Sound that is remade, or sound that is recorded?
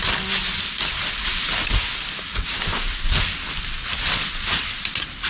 recorded